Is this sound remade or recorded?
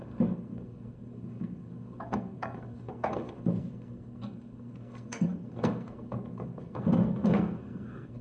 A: remade